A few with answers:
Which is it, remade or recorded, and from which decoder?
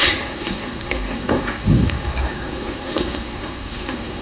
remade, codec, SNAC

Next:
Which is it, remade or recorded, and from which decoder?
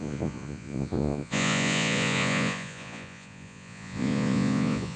remade, vocoder, Vocos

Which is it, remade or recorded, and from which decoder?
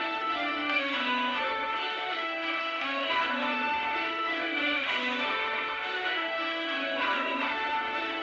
remade, autoencoder, DAC-VAE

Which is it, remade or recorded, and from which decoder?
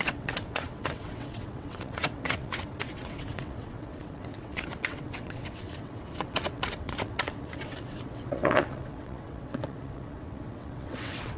remade, vocoder, WaveNeXt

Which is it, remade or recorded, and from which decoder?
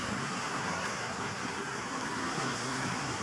remade, codec, SNAC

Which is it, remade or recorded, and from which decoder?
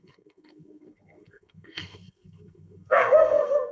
remade, codec, SNAC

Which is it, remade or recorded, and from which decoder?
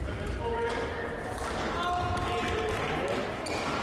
recorded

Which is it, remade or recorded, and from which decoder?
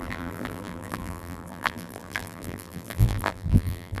remade, vocoder, BigVGAN v2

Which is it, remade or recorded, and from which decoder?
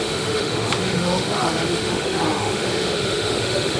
remade, autoencoder, DAC-VAE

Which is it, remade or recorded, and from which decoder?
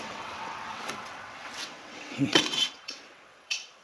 remade, vocoder, WaveNeXt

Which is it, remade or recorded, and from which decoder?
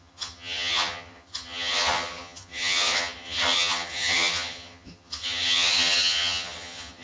remade, vocoder, HiFi-GAN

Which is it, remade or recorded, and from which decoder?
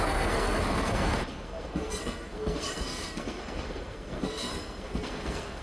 remade, codec, SNAC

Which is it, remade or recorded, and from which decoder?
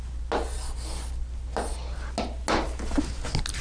recorded